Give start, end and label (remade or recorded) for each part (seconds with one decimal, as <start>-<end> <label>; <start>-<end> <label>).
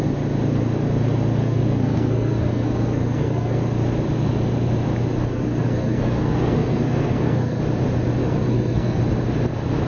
0.0-1.4 recorded; 1.4-3.6 remade; 3.6-5.3 recorded; 5.3-7.6 remade; 7.6-8.2 recorded; 8.2-9.0 remade; 9.0-9.9 recorded